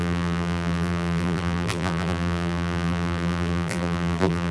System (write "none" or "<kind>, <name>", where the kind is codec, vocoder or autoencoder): vocoder, BigVGAN v2